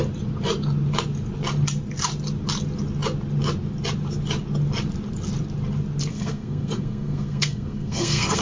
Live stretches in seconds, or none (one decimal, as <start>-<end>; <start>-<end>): 0.0-6.1